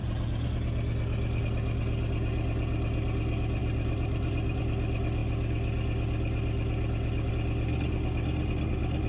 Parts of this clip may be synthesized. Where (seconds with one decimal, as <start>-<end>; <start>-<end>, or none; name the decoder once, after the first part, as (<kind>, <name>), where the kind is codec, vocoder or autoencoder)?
3.6-4.6 (vocoder, BigVGAN v2)